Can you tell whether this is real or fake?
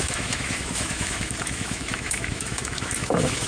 fake